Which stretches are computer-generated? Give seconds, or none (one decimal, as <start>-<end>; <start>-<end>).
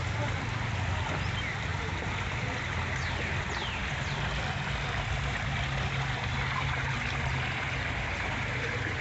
none